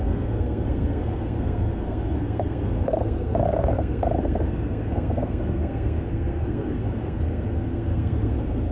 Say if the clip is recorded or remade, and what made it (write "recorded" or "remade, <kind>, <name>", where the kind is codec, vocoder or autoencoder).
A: remade, codec, SNAC